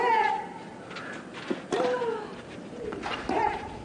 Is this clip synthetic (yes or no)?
no